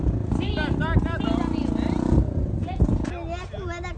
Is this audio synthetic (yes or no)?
no